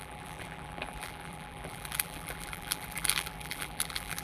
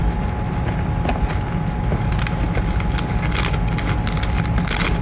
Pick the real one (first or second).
second